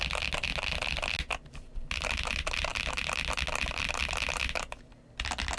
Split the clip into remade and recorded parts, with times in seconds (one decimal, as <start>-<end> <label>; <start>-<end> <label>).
0.0-5.6 recorded